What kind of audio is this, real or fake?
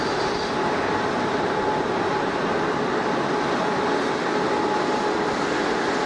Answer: real